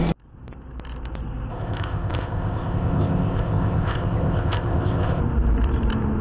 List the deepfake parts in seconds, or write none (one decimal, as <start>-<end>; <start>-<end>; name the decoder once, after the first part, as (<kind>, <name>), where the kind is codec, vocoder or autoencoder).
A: 1.5-5.2 (codec, ZipCodec)